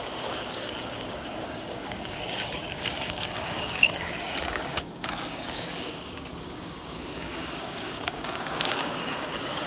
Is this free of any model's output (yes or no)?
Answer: no